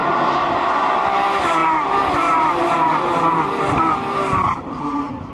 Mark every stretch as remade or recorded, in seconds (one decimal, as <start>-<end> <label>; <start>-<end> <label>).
0.0-0.9 remade; 0.9-1.6 recorded; 1.6-4.8 remade; 4.8-5.3 recorded